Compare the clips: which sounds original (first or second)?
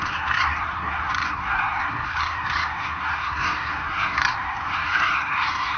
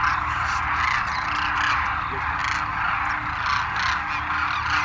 second